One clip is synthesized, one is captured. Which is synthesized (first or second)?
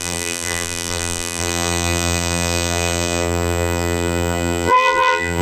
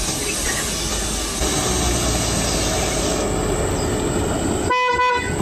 first